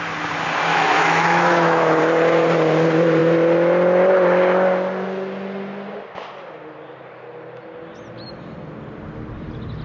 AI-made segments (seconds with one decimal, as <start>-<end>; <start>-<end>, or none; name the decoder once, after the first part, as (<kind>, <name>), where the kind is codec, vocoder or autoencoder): 0.7-2.0 (autoencoder, DAC-VAE)